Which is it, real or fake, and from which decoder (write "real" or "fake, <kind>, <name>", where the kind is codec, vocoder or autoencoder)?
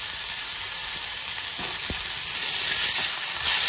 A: real